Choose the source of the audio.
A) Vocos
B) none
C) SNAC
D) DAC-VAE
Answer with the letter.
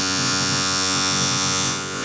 A